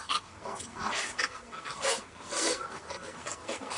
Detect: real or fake fake